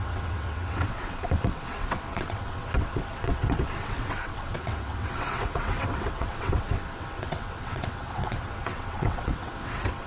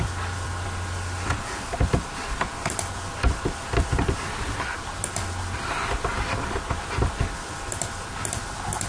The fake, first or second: first